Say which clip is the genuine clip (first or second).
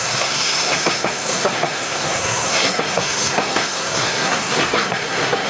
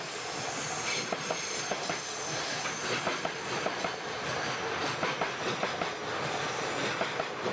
second